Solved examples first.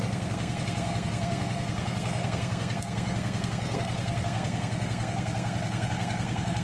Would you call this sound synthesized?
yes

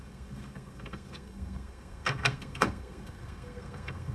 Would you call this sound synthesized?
yes